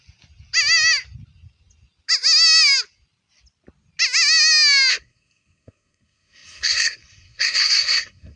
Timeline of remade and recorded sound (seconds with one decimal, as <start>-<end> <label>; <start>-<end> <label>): 0.0-4.9 recorded; 4.9-8.4 remade